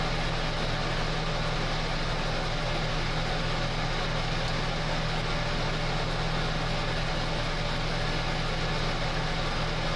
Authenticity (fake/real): real